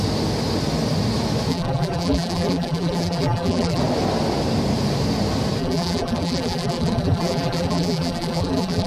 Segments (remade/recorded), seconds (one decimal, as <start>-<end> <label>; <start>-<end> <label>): 0.0-1.5 recorded; 1.5-3.8 remade; 3.8-5.6 recorded; 5.6-8.9 remade